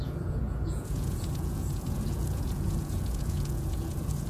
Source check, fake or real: fake